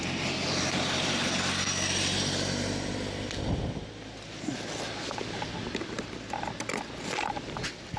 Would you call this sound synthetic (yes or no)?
no